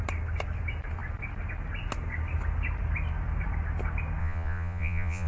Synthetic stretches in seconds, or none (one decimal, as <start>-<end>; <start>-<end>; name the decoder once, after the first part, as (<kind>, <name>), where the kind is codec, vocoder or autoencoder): 4.2-5.3 (vocoder, Vocos)